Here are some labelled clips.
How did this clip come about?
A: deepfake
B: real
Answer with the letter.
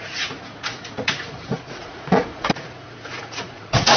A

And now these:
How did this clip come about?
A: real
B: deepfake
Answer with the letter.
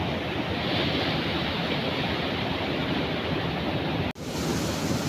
A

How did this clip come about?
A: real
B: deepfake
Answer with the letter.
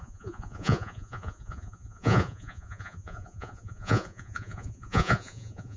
B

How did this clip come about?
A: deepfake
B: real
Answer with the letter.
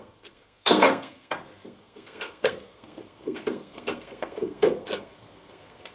A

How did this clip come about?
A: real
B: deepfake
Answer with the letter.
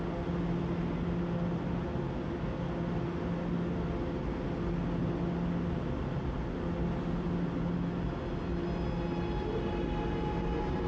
A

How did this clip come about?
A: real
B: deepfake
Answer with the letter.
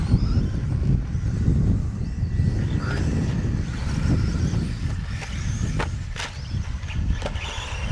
A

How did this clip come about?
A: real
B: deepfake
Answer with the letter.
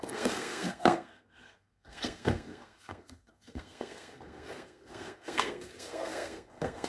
B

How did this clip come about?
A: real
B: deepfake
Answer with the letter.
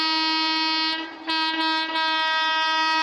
A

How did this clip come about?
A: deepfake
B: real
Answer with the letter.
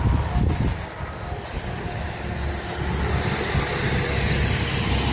B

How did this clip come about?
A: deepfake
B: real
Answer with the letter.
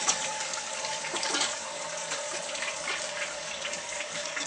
A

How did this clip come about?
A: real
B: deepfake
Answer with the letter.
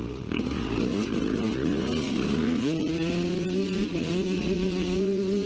B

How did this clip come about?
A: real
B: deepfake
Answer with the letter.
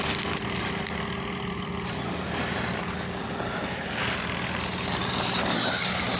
A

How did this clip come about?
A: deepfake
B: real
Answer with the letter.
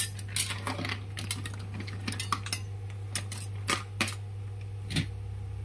B